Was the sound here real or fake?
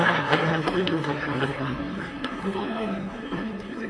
fake